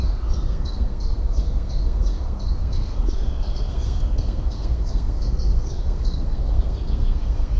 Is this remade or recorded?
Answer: remade